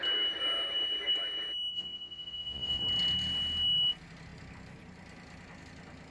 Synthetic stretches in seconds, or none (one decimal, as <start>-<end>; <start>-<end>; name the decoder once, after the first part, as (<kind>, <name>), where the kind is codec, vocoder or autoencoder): 1.7-2.8 (vocoder, WaveNeXt)